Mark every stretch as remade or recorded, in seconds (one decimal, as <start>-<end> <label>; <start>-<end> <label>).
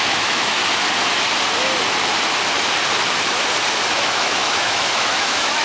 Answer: 0.0-0.6 remade; 0.6-3.9 recorded; 3.9-5.6 remade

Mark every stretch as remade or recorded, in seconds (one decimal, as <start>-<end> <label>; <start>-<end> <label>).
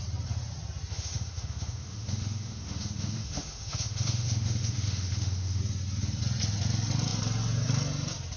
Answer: 0.0-0.9 recorded; 0.9-5.6 remade; 5.6-8.4 recorded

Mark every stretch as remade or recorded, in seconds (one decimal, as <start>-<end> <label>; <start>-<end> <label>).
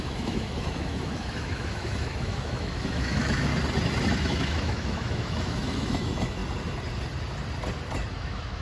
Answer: 0.0-3.5 remade; 3.5-4.1 recorded; 4.1-6.4 remade; 6.4-8.1 recorded; 8.1-8.6 remade